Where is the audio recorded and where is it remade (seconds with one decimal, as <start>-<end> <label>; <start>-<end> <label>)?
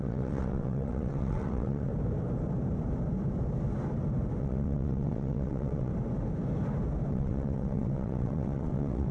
0.0-1.9 remade; 1.9-4.4 recorded; 4.4-5.9 remade; 5.9-7.1 recorded; 7.1-9.1 remade